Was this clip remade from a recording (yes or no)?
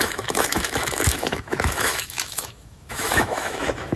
yes